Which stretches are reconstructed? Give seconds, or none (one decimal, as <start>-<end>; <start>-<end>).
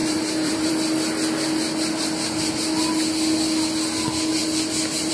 0.0-0.7